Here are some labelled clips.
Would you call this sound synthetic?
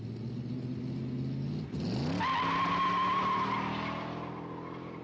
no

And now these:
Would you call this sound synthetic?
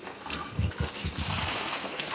yes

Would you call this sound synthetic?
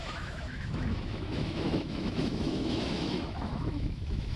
yes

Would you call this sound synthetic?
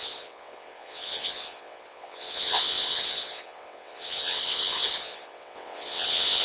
yes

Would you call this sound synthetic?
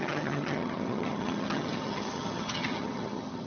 yes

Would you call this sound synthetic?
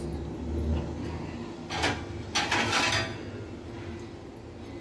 no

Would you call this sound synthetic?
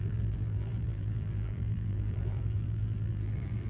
yes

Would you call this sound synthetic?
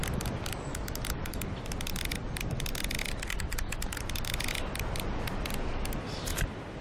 no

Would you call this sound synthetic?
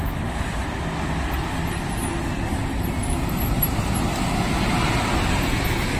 no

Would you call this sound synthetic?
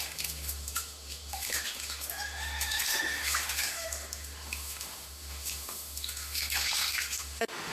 yes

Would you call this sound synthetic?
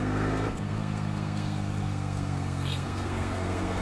yes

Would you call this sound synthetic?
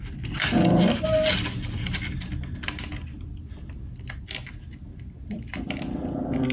no